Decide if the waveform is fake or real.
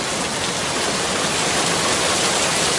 real